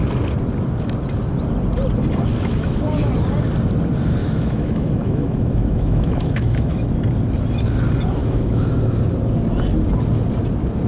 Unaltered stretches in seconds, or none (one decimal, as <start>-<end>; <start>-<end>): 0.0-2.3; 2.8-4.2; 6.9-8.2; 9.0-10.9